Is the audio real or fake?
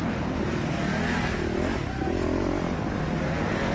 real